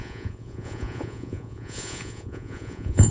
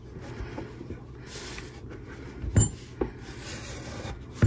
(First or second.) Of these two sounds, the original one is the second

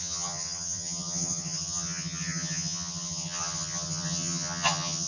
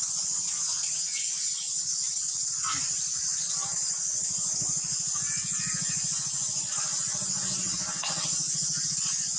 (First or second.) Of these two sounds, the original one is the second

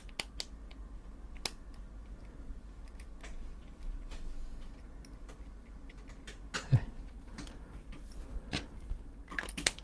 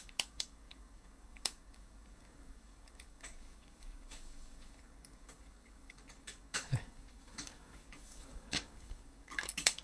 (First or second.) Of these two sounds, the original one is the first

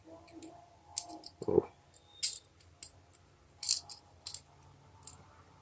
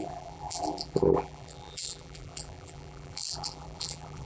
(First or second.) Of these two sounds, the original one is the first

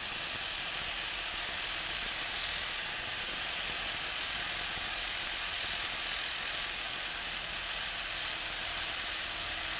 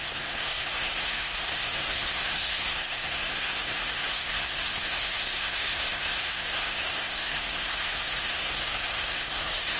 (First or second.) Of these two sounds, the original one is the first